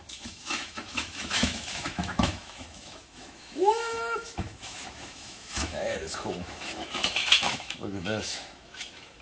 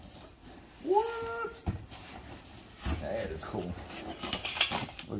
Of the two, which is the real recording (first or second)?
second